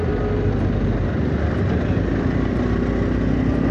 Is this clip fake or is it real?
real